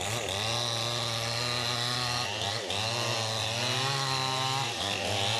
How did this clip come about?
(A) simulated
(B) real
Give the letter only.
B